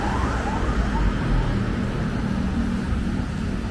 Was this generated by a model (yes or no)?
no